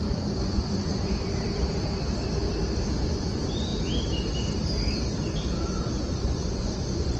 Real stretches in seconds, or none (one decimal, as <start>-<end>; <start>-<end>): 1.2-3.0; 3.7-5.9